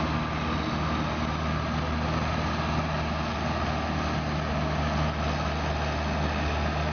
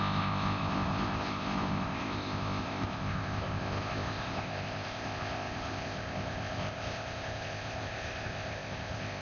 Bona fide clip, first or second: first